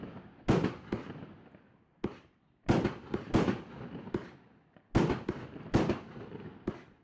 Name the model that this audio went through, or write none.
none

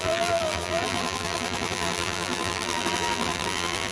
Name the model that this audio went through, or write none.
vocoder, BigVGAN v2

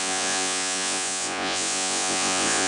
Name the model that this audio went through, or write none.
vocoder, Vocos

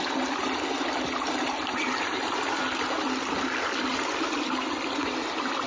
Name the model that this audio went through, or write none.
none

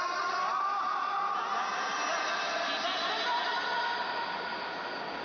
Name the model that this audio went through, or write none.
none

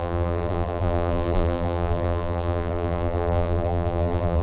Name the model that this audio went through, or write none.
vocoder, BigVGAN v2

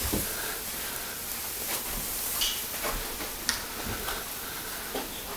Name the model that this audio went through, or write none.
none